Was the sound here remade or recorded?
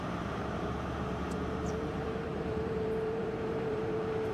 remade